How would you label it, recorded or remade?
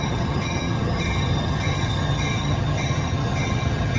remade